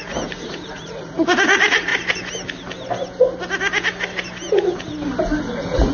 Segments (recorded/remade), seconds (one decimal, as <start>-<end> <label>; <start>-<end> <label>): 0.0-1.9 remade; 1.9-5.4 recorded; 5.4-5.9 remade